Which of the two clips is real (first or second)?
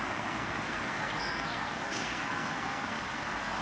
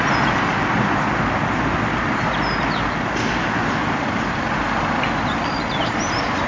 second